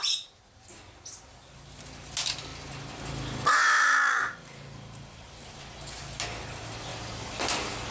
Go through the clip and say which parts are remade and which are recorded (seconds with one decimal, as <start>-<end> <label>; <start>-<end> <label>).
0.0-7.9 recorded